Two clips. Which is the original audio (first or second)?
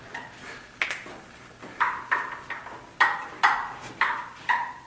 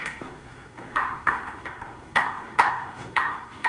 first